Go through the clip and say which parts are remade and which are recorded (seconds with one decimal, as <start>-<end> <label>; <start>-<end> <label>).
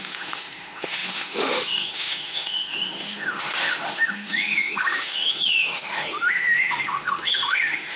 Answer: 0.0-8.0 remade